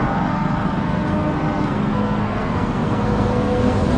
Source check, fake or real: fake